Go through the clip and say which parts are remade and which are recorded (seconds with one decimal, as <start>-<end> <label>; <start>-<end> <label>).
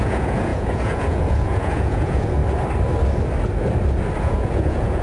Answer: 0.0-2.4 remade; 2.4-4.2 recorded; 4.2-5.0 remade